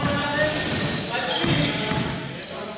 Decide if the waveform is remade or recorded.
recorded